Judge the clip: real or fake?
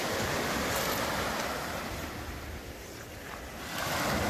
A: real